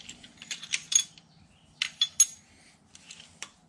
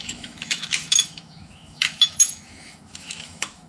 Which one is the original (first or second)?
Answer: first